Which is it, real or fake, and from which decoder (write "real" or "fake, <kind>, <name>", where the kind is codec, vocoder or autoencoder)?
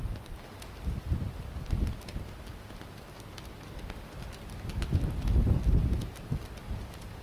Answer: real